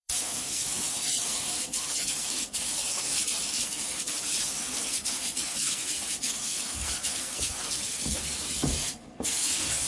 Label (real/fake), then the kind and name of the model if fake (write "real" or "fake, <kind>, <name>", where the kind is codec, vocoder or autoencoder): fake, codec, SNAC